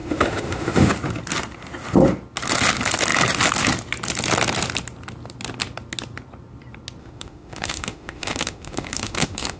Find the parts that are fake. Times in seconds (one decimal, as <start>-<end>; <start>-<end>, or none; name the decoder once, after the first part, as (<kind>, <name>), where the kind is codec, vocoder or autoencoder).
0.0-0.9 (autoencoder, DAC-VAE); 7.0-9.6